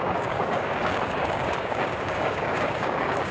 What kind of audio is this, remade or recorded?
remade